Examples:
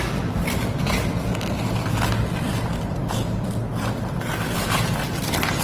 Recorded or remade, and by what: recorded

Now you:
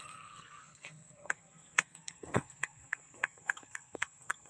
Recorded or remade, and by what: remade, codec, SNAC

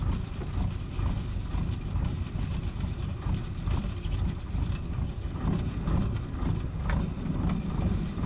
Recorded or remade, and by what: recorded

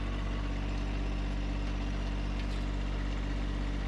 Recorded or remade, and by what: recorded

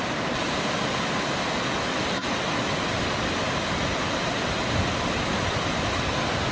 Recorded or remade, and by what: recorded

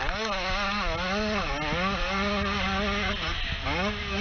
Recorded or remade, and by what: recorded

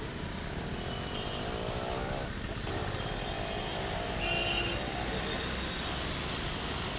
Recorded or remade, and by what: recorded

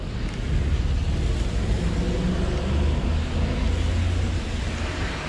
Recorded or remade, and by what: recorded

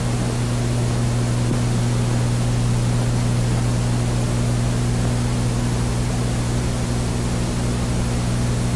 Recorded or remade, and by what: recorded